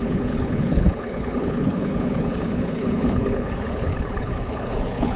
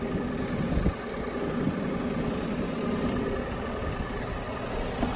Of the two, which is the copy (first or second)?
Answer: first